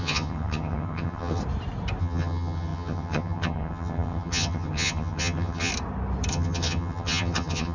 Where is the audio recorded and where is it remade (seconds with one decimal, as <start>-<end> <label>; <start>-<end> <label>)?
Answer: 0.0-1.4 remade; 1.4-2.0 recorded; 2.0-5.7 remade; 5.7-6.3 recorded; 6.3-7.7 remade